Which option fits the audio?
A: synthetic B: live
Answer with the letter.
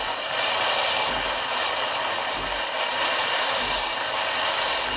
B